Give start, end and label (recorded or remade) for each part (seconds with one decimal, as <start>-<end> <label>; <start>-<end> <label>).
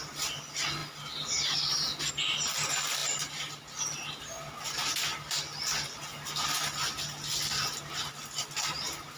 0.0-9.2 recorded